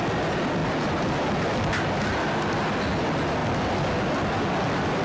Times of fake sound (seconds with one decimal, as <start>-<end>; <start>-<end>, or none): none